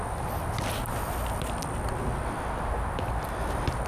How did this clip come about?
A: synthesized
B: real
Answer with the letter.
B